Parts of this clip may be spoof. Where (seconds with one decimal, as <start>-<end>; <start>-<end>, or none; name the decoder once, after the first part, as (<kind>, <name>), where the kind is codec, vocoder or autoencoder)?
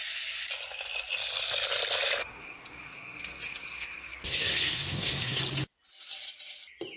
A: 2.2-5.4 (codec, SNAC)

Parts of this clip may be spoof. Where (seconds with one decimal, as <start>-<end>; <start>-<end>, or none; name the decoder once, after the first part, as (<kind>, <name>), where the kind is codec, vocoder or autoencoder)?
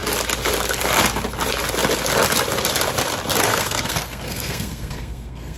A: 3.5-5.6 (codec, SNAC)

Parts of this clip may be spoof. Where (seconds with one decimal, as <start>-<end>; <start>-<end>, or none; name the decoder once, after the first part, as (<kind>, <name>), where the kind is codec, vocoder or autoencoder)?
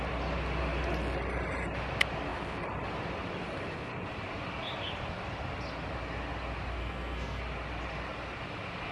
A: 6.8-7.4 (codec, SNAC)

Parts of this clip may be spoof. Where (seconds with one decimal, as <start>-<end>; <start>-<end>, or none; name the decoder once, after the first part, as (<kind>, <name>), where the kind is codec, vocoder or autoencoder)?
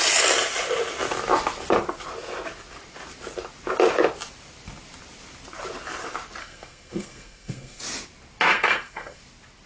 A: 6.4-7.8 (codec, SNAC); 8.5-9.2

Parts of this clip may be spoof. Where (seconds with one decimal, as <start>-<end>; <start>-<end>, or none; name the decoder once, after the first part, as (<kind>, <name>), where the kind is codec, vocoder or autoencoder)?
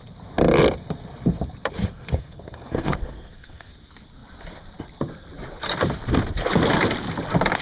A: 1.8-3.7 (codec, SNAC)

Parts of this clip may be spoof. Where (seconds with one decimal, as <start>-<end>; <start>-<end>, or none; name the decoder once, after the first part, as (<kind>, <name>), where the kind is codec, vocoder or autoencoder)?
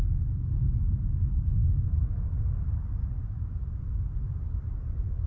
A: none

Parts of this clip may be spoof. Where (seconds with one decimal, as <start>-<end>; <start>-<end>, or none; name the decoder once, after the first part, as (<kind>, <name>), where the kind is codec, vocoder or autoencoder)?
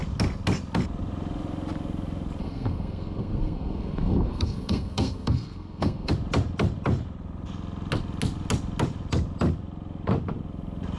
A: 2.4-6.1 (codec, SNAC)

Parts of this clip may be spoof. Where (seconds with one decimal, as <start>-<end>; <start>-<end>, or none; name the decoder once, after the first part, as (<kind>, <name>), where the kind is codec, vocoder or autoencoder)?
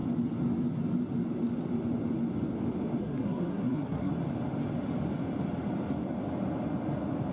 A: 3.0-4.1 (codec, SNAC)